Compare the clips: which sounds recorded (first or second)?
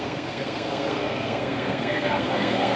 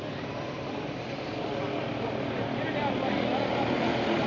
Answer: second